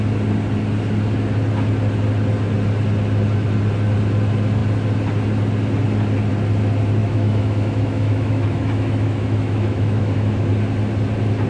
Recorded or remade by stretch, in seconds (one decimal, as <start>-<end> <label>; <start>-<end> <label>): 0.0-7.0 recorded; 7.0-10.5 remade; 10.5-11.5 recorded